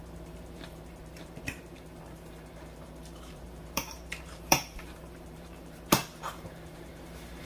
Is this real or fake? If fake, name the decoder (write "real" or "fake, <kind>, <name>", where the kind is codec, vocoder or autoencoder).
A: fake, vocoder, BigVGAN v2